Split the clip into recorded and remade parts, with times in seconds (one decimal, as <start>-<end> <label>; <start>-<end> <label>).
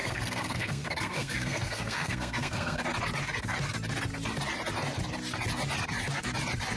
0.0-2.8 remade; 2.8-6.8 recorded